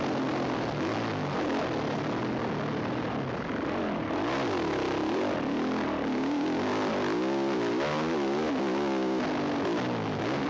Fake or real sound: real